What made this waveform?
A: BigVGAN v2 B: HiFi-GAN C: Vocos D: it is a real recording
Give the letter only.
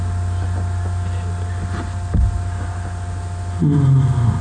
D